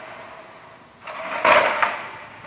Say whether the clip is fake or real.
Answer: real